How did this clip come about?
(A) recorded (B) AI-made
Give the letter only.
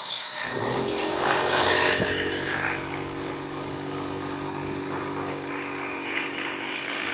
B